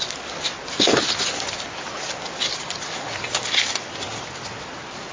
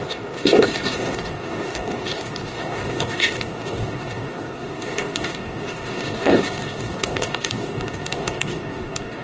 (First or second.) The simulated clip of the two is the second